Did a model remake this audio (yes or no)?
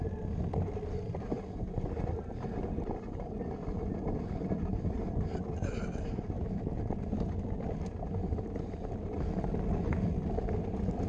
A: no